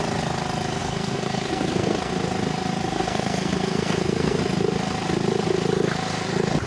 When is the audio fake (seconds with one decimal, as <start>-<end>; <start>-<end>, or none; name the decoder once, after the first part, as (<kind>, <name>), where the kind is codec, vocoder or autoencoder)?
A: 0.8-2.1 (codec, SNAC); 2.9-4.4